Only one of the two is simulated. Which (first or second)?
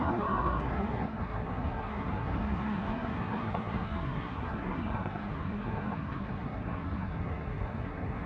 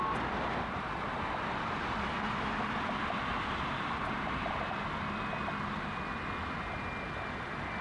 first